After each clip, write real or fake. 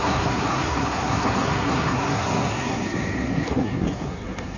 fake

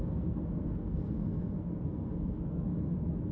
fake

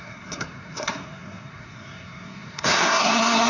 fake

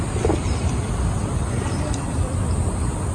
fake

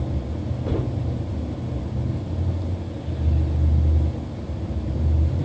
real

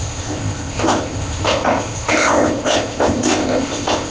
fake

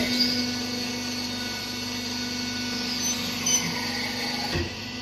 real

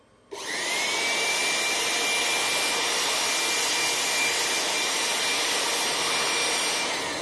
real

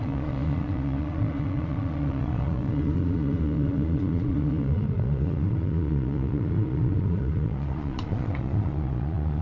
fake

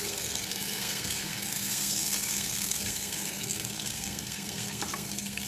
fake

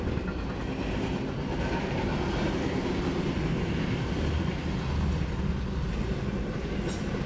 real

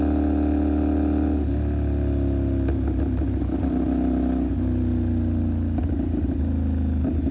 real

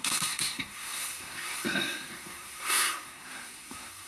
fake